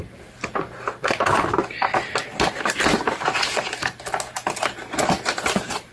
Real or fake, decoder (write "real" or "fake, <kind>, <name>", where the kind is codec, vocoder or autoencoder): real